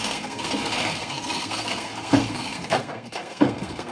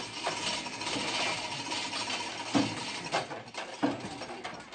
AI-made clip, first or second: first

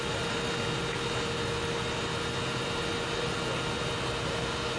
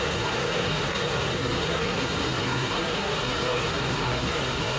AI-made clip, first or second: second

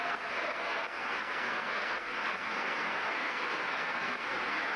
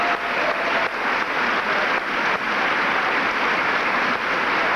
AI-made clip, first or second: first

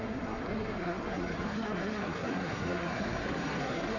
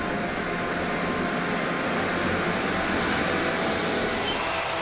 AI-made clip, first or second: first